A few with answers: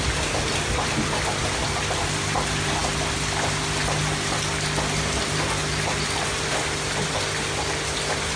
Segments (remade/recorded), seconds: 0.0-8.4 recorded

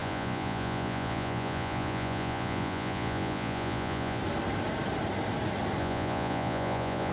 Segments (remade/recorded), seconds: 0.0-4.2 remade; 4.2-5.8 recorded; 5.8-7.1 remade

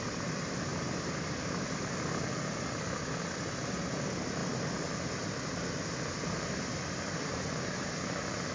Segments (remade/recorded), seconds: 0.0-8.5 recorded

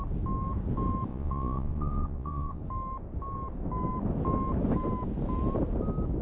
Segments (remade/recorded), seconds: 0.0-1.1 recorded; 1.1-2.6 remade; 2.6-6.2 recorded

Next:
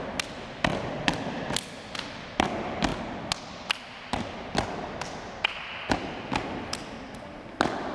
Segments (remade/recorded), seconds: 0.0-7.9 recorded

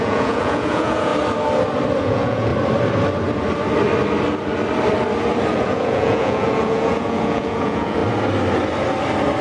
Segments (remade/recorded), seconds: 0.0-1.1 remade; 1.1-2.0 recorded; 2.0-2.5 remade; 2.5-5.5 recorded; 5.5-8.0 remade; 8.0-9.4 recorded

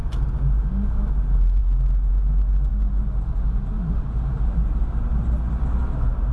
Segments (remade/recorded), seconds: 0.0-6.3 recorded

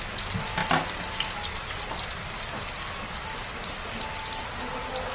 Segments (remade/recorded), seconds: 0.0-5.1 recorded